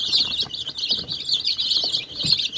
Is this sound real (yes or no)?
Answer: yes